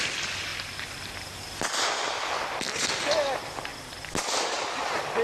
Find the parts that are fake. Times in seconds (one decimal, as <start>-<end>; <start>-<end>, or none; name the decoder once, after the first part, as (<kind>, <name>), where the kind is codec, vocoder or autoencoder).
none